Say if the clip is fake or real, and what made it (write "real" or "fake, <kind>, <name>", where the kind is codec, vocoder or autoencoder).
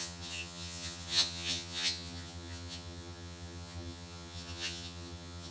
fake, vocoder, HiFi-GAN